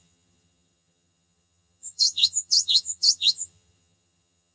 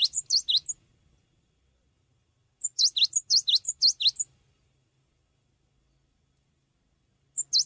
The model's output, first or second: first